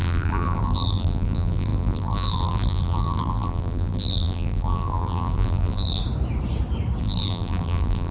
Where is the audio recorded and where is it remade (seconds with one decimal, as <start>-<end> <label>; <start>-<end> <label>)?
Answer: 0.0-6.0 remade; 6.0-7.0 recorded; 7.0-8.1 remade

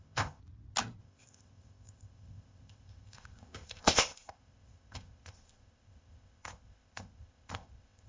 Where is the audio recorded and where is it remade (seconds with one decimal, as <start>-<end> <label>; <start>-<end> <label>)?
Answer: 0.0-0.4 remade; 0.4-1.0 recorded; 1.0-8.1 remade